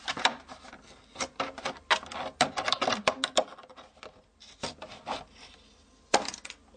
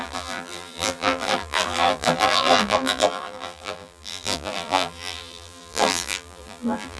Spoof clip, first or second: second